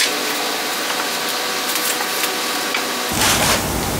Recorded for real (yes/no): yes